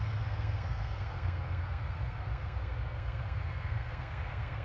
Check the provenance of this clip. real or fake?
fake